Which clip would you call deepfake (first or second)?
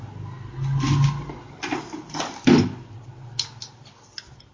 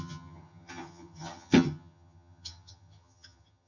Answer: second